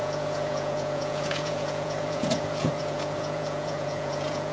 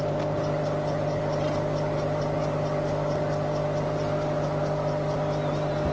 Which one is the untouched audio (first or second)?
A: second